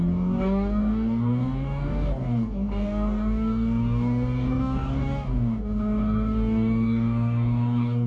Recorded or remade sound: remade